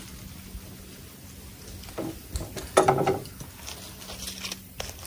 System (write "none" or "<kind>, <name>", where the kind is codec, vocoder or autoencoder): none